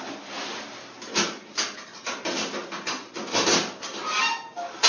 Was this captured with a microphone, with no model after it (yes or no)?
yes